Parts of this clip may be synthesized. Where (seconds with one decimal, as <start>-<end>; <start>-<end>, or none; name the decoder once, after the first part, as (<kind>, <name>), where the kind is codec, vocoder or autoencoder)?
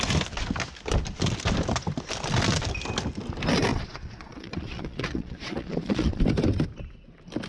3.7-6.2 (vocoder, Vocos)